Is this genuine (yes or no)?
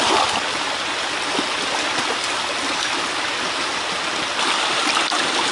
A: yes